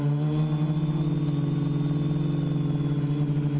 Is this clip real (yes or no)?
yes